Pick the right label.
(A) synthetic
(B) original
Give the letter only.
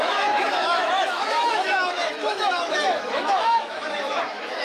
A